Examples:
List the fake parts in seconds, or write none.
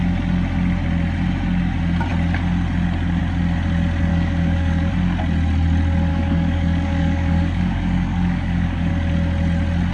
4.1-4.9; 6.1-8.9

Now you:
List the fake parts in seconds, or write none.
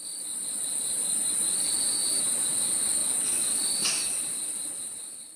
none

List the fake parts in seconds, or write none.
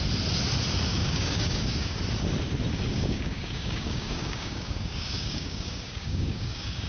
0.9-2.0; 2.9-6.9